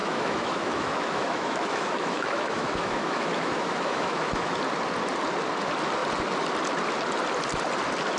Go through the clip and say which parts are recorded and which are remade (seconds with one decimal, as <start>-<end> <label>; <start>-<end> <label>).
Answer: 0.0-4.6 remade; 4.6-8.2 recorded